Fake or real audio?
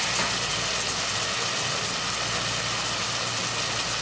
real